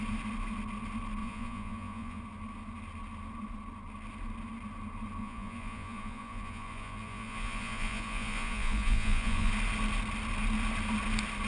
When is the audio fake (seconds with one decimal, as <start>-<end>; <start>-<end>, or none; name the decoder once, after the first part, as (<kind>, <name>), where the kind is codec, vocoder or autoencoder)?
1.2-2.2 (vocoder, Vocos); 5.2-9.5